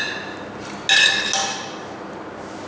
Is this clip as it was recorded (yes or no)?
yes